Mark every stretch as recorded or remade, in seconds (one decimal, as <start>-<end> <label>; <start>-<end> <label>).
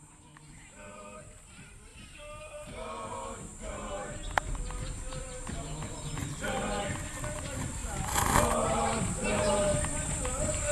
0.0-6.2 recorded; 6.2-6.9 remade; 6.9-9.7 recorded; 9.7-10.7 remade